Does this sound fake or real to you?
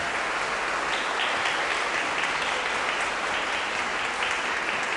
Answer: real